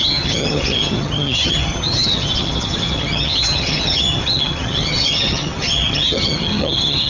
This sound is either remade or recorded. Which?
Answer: remade